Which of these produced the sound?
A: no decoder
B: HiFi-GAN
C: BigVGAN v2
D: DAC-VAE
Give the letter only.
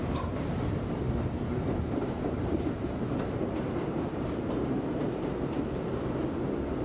C